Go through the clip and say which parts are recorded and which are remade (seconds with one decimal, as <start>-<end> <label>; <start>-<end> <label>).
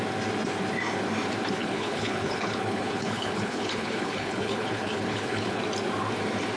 0.0-1.6 recorded; 1.6-5.6 remade; 5.6-6.6 recorded